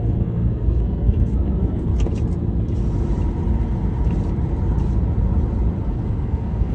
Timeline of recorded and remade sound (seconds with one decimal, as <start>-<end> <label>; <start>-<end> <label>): 0.0-1.9 remade; 1.9-5.9 recorded; 5.9-6.7 remade